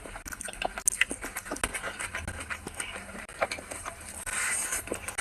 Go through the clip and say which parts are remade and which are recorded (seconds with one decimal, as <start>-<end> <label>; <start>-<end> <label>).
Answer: 0.0-3.3 recorded; 3.3-4.8 remade; 4.8-5.2 recorded